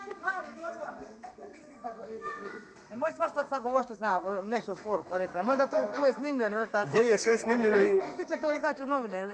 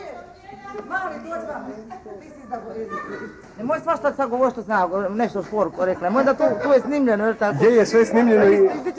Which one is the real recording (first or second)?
second